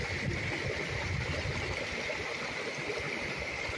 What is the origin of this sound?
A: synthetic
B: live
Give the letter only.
B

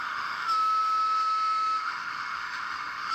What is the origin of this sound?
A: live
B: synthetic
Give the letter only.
B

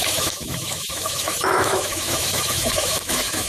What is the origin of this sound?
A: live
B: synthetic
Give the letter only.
B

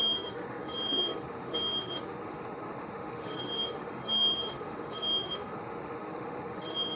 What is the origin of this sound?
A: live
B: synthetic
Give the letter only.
B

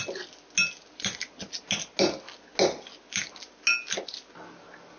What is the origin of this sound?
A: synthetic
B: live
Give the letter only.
B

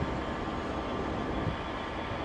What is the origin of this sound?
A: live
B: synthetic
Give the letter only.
A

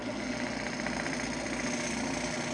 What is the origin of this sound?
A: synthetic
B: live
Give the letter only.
B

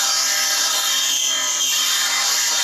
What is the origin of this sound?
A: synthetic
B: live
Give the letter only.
B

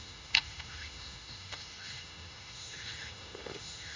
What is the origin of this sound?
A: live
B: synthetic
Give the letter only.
B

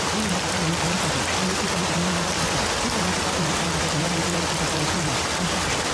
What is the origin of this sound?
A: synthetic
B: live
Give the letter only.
B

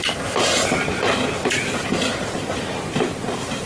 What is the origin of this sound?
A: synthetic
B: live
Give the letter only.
B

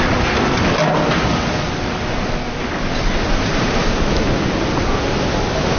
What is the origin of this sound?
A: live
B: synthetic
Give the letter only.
A